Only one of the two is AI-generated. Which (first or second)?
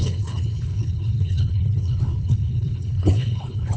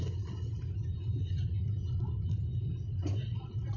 first